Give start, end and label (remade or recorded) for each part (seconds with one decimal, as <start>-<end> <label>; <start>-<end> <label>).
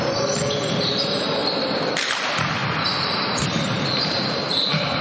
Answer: 0.0-1.4 remade; 1.4-2.1 recorded; 2.1-5.0 remade